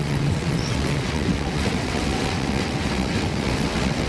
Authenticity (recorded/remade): remade